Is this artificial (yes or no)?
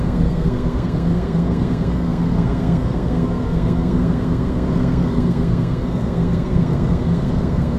yes